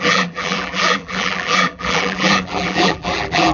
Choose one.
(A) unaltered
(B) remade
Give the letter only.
B